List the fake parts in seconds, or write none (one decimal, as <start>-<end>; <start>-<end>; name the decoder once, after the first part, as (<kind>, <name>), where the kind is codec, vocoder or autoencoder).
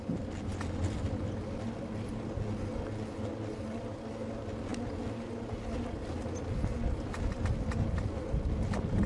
none